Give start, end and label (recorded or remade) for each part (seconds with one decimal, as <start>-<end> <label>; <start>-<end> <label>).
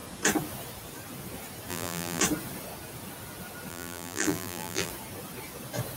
0.0-1.7 recorded; 1.7-2.2 remade; 2.2-3.7 recorded; 3.7-4.9 remade; 4.9-6.0 recorded